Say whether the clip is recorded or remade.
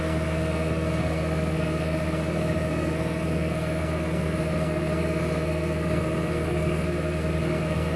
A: remade